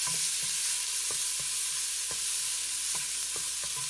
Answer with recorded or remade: recorded